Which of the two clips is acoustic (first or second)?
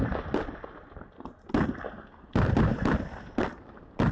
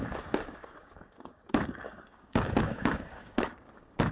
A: first